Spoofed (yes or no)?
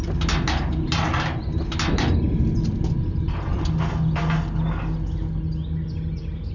no